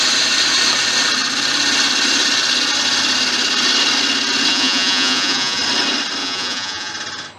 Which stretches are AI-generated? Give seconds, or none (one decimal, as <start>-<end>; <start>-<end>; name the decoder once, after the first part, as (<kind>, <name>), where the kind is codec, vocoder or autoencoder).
4.5-5.6 (vocoder, Vocos); 6.2-6.9